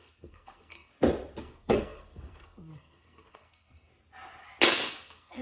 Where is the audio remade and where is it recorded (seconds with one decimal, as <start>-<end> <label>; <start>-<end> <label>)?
0.0-0.9 remade; 0.9-1.4 recorded; 1.4-3.9 remade; 3.9-4.7 recorded; 4.7-5.4 remade